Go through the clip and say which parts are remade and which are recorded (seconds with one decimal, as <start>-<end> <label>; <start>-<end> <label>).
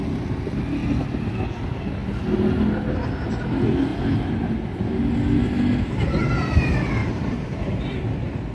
0.0-3.9 recorded; 3.9-4.9 remade; 4.9-7.0 recorded; 7.0-7.8 remade; 7.8-8.5 recorded